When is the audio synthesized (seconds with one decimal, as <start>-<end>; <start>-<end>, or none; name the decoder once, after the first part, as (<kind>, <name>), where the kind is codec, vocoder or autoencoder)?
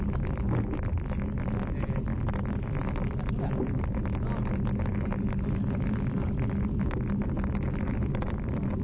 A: none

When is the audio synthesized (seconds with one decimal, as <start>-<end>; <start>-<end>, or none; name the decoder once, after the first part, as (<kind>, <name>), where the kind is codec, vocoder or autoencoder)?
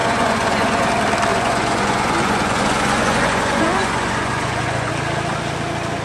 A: 0.0-0.9 (vocoder, Vocos); 1.3-4.9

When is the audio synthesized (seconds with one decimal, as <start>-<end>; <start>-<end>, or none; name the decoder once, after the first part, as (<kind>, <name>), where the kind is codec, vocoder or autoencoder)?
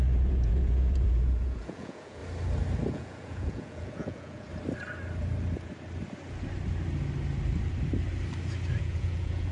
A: 0.0-2.2 (vocoder, Vocos); 2.9-4.5; 8.8-9.5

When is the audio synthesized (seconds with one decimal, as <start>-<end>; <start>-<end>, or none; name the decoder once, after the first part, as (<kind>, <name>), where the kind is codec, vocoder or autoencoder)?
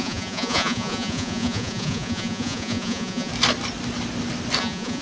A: 0.0-3.3 (vocoder, Vocos); 4.6-5.0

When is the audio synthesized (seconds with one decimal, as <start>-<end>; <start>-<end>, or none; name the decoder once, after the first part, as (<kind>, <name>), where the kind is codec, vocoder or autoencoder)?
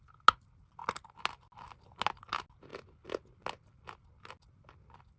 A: none